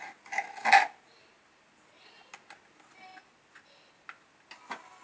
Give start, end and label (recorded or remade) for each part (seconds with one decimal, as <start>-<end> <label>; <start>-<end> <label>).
0.0-5.0 recorded